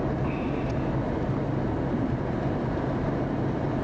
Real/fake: real